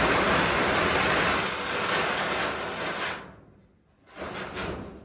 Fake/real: real